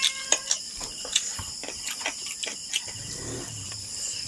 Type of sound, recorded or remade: remade